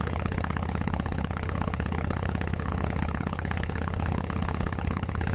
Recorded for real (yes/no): no